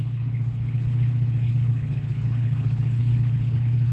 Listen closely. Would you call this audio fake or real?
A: fake